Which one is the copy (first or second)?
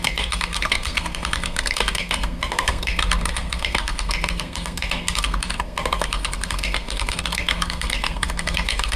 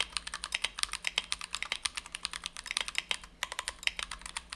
first